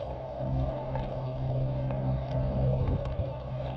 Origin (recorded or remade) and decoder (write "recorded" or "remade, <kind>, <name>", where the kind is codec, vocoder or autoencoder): remade, codec, DAC